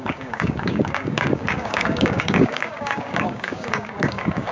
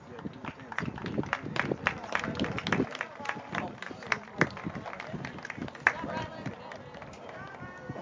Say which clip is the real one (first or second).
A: second